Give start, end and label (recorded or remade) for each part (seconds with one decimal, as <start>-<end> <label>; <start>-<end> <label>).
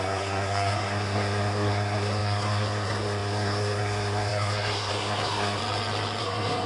0.0-5.6 remade; 5.6-6.2 recorded; 6.2-6.7 remade